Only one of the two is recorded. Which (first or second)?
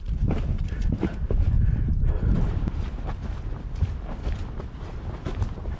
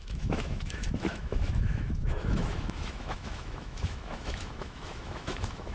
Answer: first